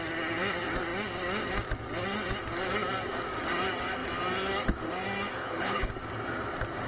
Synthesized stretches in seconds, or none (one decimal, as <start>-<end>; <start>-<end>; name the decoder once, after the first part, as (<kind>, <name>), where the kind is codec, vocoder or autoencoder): 5.4-5.9 (codec, HILCodec)